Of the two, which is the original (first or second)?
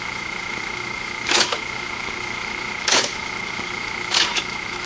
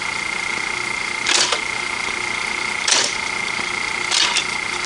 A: second